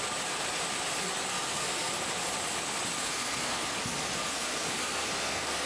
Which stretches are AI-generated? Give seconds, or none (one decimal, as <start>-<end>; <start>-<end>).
1.3-1.9; 3.0-3.6; 4.3-5.7